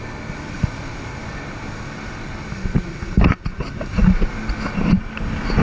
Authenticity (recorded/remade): recorded